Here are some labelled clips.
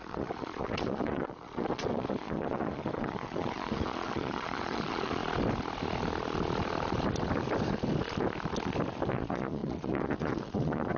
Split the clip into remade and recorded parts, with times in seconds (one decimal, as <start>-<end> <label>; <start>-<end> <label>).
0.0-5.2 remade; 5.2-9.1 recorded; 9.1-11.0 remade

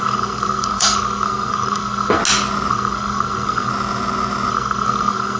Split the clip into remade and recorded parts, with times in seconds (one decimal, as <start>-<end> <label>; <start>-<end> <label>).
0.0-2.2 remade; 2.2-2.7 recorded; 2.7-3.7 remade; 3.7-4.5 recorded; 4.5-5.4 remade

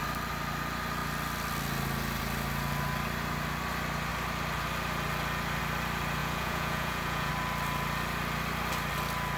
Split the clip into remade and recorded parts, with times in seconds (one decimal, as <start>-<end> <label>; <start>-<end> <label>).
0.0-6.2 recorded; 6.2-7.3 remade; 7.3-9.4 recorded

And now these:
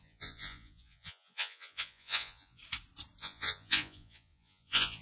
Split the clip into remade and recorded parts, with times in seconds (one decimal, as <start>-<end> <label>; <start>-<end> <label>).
0.0-2.6 remade; 2.6-3.2 recorded; 3.2-5.0 remade

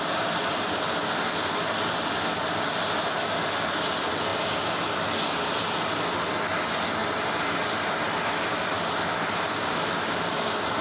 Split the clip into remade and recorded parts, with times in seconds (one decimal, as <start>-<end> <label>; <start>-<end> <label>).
0.0-10.8 recorded

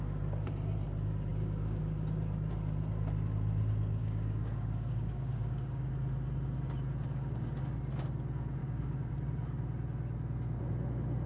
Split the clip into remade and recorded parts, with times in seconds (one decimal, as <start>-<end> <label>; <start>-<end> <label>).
0.0-1.3 recorded; 1.3-1.8 remade; 1.8-4.0 recorded; 4.0-5.9 remade; 5.9-8.6 recorded; 8.6-9.1 remade; 9.1-11.3 recorded

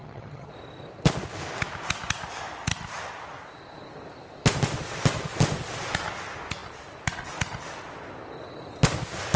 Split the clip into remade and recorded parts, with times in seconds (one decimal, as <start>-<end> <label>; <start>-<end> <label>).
0.0-0.5 remade; 0.5-9.4 recorded

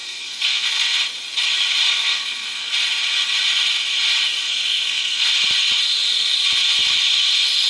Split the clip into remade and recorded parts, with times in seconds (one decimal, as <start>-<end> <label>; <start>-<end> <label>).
0.0-1.0 remade; 1.0-1.9 recorded; 1.9-2.7 remade; 2.7-4.4 recorded; 4.4-5.3 remade; 5.3-7.7 recorded